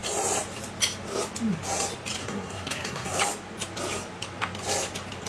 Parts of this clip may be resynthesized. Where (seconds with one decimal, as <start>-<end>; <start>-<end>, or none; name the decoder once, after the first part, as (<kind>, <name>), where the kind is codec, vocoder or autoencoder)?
2.2-3.2 (codec, SNAC)